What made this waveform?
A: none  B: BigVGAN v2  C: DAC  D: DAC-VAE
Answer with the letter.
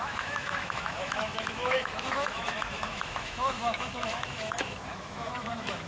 D